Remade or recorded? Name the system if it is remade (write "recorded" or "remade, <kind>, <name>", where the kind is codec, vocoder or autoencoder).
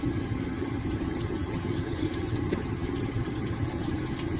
remade, vocoder, HiFi-GAN